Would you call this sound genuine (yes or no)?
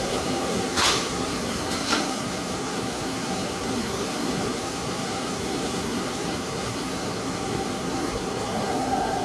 no